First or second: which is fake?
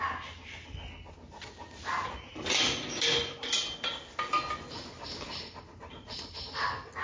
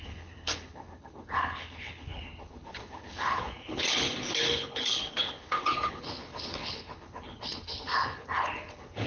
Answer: second